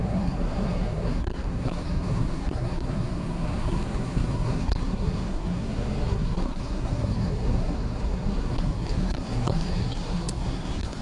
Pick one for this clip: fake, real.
fake